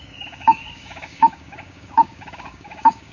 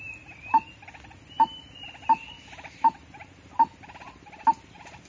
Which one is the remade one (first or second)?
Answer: first